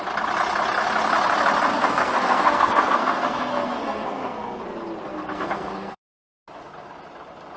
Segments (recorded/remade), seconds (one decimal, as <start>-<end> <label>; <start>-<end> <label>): 0.0-1.7 recorded; 1.7-4.6 remade; 4.6-5.1 recorded; 5.1-6.4 remade; 6.4-7.6 recorded